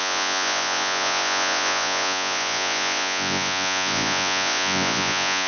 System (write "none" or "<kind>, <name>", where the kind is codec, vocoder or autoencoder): vocoder, Vocos